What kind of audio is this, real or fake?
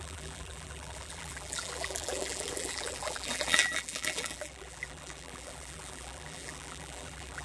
fake